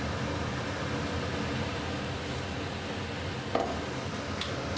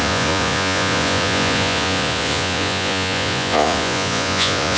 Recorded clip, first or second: first